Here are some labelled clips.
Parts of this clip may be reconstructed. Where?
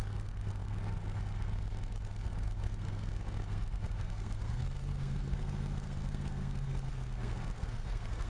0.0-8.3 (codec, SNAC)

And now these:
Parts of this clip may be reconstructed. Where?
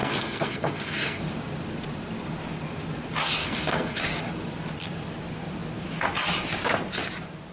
0.0-1.2 (codec, SNAC); 3.4-4.0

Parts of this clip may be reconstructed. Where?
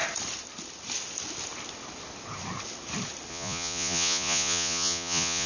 3.3-5.5 (vocoder, Vocos)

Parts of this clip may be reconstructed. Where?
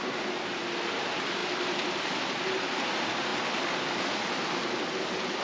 none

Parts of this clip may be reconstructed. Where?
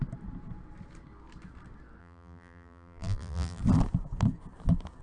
2.0-3.6 (vocoder, BigVGAN v2)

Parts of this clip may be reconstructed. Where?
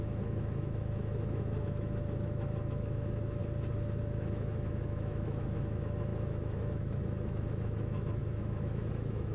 0.0-3.4 (autoencoder, DAC-VAE); 4.0-9.3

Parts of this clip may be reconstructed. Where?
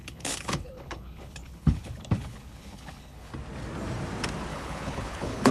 0.0-3.3 (codec, HILCodec); 4.5-5.5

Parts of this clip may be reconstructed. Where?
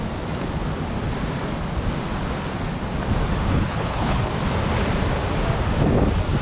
3.5-4.3 (codec, HILCodec)